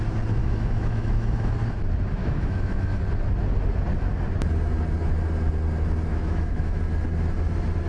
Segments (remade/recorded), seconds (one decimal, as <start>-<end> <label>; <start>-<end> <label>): 0.0-0.4 recorded; 0.4-1.5 remade; 1.5-2.2 recorded; 2.2-3.0 remade; 3.0-6.1 recorded; 6.1-6.8 remade; 6.8-7.9 recorded

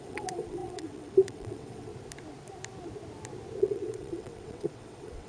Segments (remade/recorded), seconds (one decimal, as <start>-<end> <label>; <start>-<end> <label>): 0.0-1.9 remade; 1.9-3.6 recorded; 3.6-5.3 remade